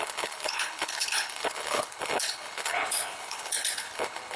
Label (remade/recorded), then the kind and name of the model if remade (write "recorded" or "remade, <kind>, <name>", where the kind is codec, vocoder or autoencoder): remade, codec, HILCodec